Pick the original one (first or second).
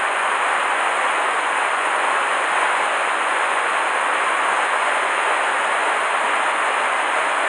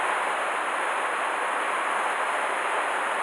second